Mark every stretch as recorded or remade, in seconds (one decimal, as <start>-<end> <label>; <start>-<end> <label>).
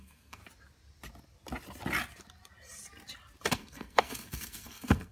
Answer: 0.0-0.4 remade; 0.4-3.5 recorded; 3.5-5.1 remade